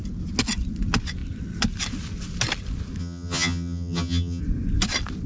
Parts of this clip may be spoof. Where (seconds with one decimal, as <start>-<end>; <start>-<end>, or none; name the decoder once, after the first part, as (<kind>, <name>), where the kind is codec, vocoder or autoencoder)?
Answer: 3.0-4.4 (vocoder, HiFi-GAN)